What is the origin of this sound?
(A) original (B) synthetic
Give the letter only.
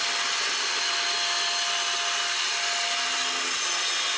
A